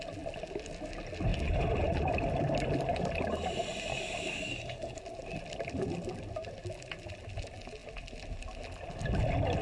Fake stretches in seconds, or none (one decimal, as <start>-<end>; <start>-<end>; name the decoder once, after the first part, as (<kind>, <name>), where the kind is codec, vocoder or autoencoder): 3.9-5.0 (codec, DAC)